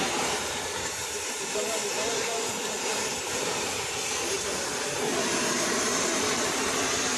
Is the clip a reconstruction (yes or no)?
yes